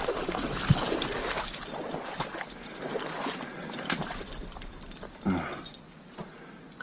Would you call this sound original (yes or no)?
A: yes